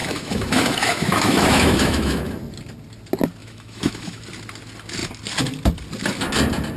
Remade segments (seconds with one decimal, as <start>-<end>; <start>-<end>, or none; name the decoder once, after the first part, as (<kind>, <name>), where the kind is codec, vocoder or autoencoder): 0.0-2.3 (autoencoder, DAC-VAE); 3.4-4.2